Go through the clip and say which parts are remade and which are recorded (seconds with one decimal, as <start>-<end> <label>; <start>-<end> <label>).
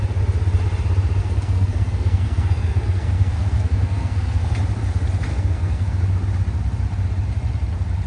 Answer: 0.0-1.2 recorded; 1.2-4.4 remade; 4.4-5.3 recorded; 5.3-6.0 remade; 6.0-8.1 recorded